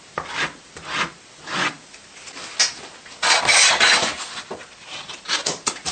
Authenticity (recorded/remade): recorded